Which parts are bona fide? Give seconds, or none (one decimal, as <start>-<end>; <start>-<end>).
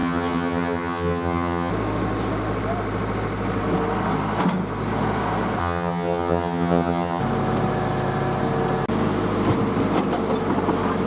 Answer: 1.7-5.6; 7.2-11.1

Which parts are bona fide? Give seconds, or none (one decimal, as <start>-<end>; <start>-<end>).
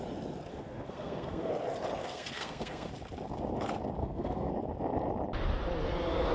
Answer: 0.0-0.5; 1.5-2.0; 2.9-4.0; 4.5-6.3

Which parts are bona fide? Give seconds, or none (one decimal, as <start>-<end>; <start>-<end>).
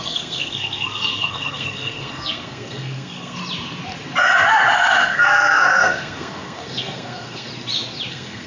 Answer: 3.4-4.7; 7.5-8.1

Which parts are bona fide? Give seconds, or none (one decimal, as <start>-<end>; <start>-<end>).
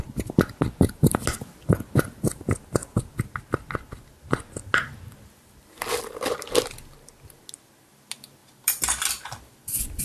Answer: 0.0-8.4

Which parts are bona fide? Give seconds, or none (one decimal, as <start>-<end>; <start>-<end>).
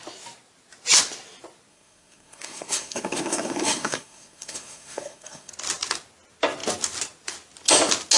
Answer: 0.0-1.7; 5.5-8.2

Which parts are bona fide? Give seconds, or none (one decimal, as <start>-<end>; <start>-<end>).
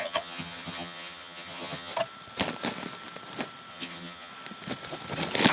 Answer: 1.9-3.7; 4.3-5.5